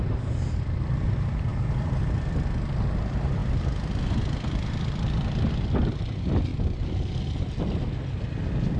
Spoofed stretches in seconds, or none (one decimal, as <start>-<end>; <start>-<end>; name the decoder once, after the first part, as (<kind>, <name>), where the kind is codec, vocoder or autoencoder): none